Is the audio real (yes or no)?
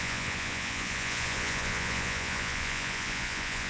no